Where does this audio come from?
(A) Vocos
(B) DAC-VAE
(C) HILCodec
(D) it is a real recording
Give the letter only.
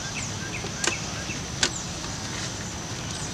D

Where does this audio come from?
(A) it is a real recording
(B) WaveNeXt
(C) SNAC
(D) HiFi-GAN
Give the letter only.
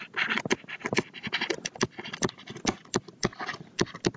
A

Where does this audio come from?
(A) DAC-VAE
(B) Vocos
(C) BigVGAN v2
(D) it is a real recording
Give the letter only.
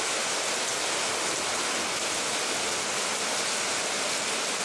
D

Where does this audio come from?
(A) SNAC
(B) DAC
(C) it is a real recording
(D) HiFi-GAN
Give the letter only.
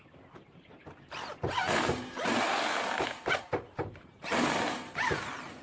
C